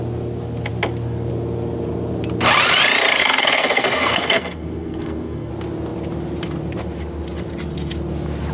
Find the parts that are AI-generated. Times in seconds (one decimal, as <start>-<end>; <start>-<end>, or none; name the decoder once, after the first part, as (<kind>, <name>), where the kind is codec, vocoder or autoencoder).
3.2-5.5 (codec, SNAC)